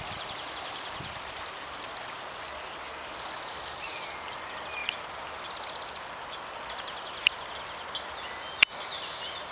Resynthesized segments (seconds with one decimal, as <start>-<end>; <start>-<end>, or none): none